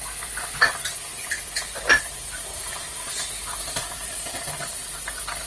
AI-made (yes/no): yes